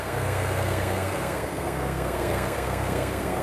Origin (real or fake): fake